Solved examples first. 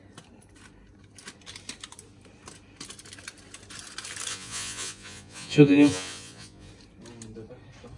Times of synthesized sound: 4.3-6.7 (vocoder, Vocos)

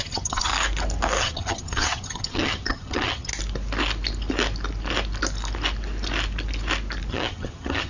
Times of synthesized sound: 0.0-0.5 (vocoder, HiFi-GAN); 1.2-3.3; 7.1-7.9

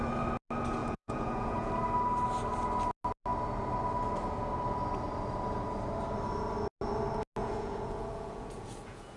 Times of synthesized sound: 0.8-1.7 (vocoder, Vocos); 7.4-9.2

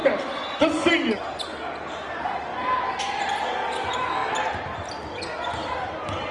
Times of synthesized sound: 0.0-0.9 (vocoder, BigVGAN v2)

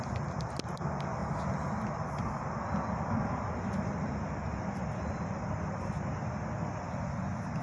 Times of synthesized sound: none

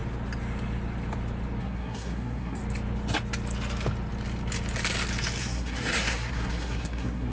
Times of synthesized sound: 1.6-2.6 (codec, SNAC); 5.4-7.3

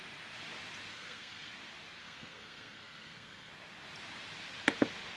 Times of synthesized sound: 0.9-1.5 (codec, SNAC); 2.0-3.5